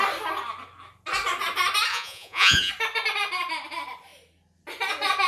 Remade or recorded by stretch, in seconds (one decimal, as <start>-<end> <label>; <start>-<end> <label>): 0.0-1.9 recorded; 1.9-2.7 remade; 2.7-5.3 recorded